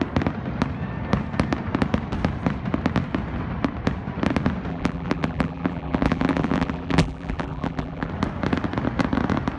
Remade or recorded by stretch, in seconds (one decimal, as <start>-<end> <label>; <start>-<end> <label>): 0.0-4.7 recorded; 4.7-8.1 remade; 8.1-9.6 recorded